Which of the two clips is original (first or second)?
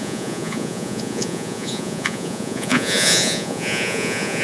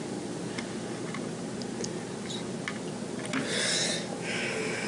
second